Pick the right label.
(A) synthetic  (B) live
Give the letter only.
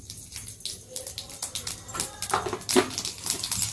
B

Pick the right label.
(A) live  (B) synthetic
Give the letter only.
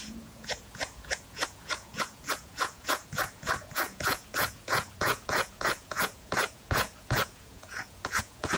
B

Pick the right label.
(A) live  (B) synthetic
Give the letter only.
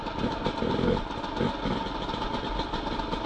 A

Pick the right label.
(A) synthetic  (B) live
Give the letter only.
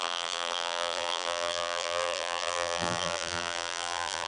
A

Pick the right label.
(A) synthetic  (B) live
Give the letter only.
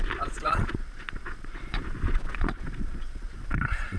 A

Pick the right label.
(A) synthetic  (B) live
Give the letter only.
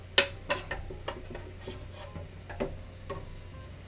B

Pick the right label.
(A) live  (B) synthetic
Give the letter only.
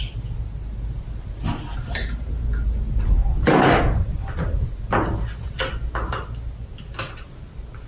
A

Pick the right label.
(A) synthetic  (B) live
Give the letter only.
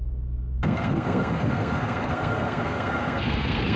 A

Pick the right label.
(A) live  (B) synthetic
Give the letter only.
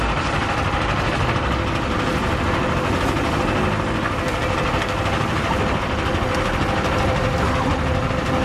A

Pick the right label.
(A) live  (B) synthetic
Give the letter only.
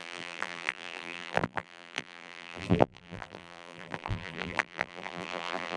B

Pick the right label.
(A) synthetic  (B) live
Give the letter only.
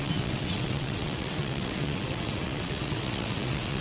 A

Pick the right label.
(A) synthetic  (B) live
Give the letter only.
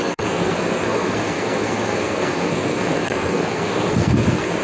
A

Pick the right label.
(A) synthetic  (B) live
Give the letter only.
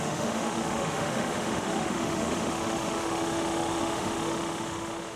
A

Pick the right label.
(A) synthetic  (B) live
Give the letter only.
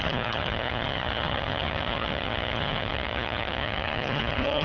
A